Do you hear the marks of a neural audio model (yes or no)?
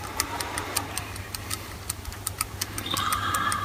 no